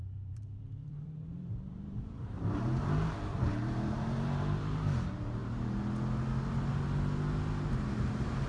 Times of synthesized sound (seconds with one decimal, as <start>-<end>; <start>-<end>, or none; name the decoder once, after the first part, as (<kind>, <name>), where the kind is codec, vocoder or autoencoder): 0.0-5.4 (vocoder, BigVGAN v2); 7.7-8.5